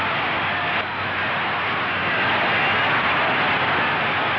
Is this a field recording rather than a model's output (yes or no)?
yes